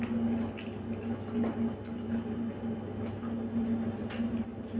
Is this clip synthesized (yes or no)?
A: no